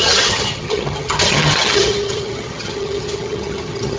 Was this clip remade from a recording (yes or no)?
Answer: yes